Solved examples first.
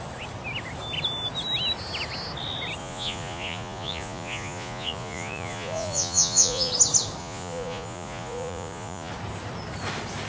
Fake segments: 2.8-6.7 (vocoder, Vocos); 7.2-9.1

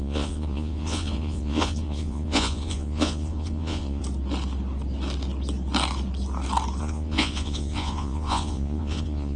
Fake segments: 0.0-4.0 (vocoder, Vocos); 6.8-9.4